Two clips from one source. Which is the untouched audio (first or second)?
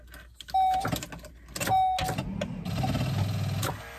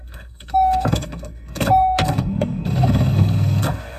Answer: first